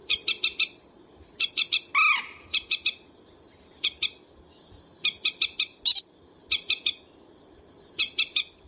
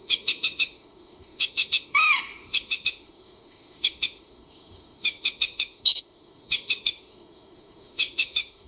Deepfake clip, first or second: second